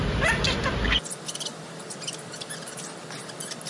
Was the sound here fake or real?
real